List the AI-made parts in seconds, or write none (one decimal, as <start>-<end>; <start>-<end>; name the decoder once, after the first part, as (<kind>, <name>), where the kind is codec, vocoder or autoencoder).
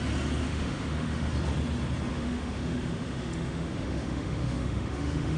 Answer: 0.4-1.3 (autoencoder, DAC-VAE); 2.1-5.4